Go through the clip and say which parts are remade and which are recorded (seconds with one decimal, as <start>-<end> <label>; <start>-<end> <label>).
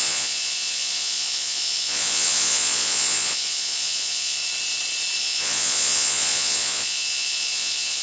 0.0-4.4 remade; 4.4-5.2 recorded; 5.2-8.0 remade